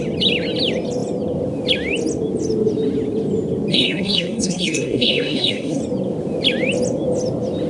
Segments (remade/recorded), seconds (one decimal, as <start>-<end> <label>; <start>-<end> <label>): 0.0-3.7 recorded; 3.7-5.8 remade; 5.8-7.7 recorded